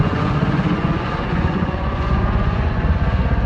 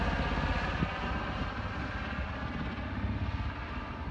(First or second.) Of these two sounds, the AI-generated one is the first